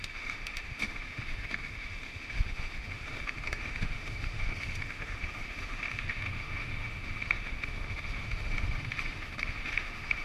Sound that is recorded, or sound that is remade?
remade